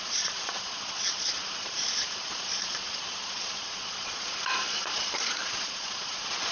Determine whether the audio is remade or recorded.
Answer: remade